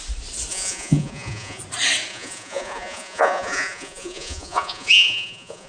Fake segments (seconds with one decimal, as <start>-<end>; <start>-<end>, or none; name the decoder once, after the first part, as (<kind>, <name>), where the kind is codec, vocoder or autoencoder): 0.5-1.6 (vocoder, Vocos); 2.1-5.7